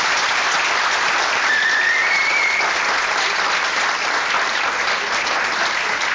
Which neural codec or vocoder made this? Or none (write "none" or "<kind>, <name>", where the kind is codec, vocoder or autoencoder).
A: vocoder, BigVGAN v2